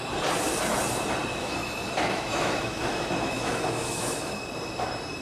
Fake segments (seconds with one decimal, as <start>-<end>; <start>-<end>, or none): 1.3-4.4